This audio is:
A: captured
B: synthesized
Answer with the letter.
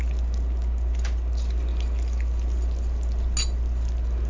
A